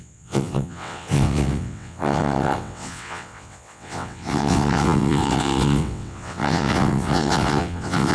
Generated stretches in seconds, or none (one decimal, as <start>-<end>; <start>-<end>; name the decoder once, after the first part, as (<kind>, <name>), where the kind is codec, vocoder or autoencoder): 0.0-8.1 (vocoder, WaveNeXt)